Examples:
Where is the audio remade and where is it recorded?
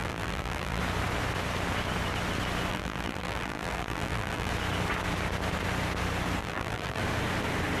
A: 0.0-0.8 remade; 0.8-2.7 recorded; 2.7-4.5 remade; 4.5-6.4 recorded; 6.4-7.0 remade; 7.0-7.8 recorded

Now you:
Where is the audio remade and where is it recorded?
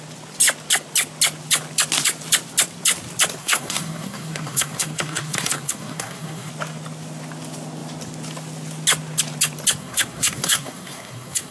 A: 0.0-3.4 recorded; 3.4-6.5 remade; 6.5-9.8 recorded; 9.8-11.5 remade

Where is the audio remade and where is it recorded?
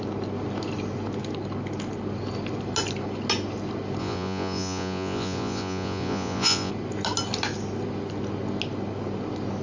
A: 0.0-4.0 recorded; 4.0-6.7 remade; 6.7-9.6 recorded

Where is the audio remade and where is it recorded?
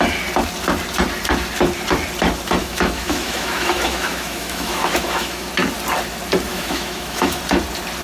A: 0.0-2.6 recorded; 2.6-5.5 remade; 5.5-6.5 recorded; 6.5-7.4 remade; 7.4-8.0 recorded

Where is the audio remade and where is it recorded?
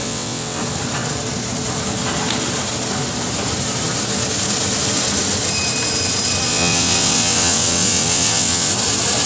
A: 0.0-0.6 remade; 0.6-6.5 recorded; 6.5-8.7 remade; 8.7-9.3 recorded